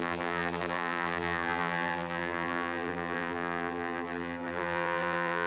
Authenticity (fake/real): fake